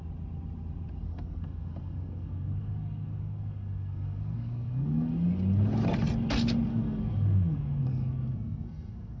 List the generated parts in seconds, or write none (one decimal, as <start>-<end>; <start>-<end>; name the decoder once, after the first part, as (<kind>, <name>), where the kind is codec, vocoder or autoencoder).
1.1-5.1 (codec, SNAC); 6.7-9.2